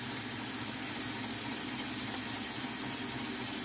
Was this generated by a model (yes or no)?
no